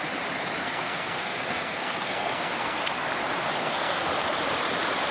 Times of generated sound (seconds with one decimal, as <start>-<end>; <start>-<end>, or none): 0.6-2.8; 3.6-4.1